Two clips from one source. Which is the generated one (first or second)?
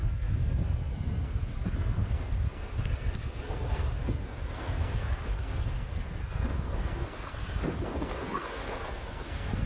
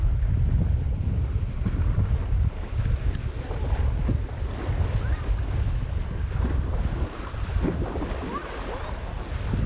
first